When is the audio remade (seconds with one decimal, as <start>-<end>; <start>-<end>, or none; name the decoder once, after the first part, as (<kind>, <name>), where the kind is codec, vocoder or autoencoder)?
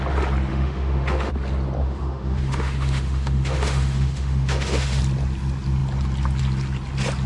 0.5-1.3 (autoencoder, DAC-VAE); 1.8-5.0